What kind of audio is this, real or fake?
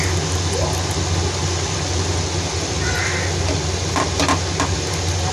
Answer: real